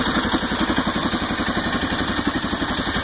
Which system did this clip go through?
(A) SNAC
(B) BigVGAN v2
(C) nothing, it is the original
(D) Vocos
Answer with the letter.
C